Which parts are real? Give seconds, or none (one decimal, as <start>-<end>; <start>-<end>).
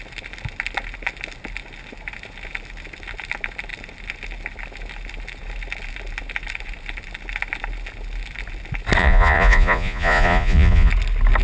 0.0-9.0; 10.9-11.4